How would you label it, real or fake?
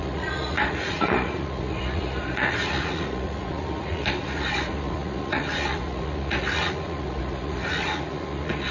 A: fake